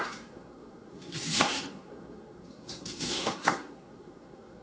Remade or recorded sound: remade